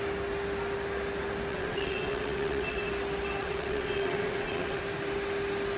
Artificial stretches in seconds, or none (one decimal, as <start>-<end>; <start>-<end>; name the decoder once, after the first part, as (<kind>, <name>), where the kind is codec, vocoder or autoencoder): 1.5-2.9 (vocoder, WaveNeXt); 3.4-4.8

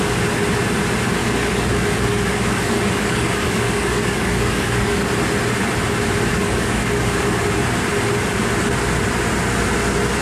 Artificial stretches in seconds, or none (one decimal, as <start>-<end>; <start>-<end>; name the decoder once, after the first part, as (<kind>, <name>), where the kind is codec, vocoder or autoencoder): 1.2-5.1 (codec, DAC); 6.3-7.4

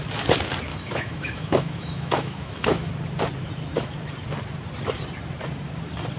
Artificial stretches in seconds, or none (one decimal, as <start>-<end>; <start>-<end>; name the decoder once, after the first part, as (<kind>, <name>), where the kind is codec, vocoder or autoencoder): 0.7-2.9 (autoencoder, DAC-VAE)